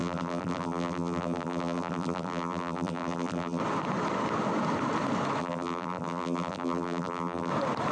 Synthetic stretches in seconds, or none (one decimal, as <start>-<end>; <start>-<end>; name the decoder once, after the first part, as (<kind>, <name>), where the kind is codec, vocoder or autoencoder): 0.0-3.6 (vocoder, BigVGAN v2); 5.4-7.5